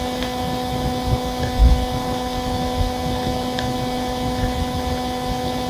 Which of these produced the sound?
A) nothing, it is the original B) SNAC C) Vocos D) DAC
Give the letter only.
A